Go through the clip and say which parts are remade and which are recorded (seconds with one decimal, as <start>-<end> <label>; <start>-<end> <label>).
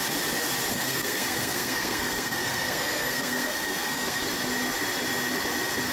0.0-0.7 recorded; 0.7-4.2 remade; 4.2-5.9 recorded